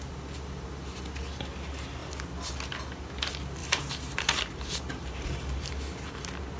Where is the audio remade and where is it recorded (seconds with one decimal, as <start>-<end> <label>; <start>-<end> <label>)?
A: 0.0-3.6 recorded; 3.6-5.7 remade; 5.7-6.6 recorded